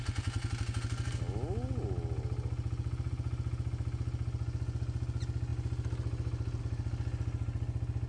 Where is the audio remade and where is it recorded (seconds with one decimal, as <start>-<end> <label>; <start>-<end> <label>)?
0.0-8.1 recorded